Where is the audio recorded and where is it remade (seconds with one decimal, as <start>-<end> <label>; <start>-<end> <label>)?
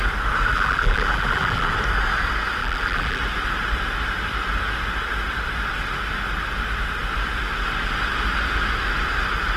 0.0-0.5 recorded; 0.5-1.7 remade; 1.7-2.6 recorded; 2.6-3.2 remade; 3.2-9.6 recorded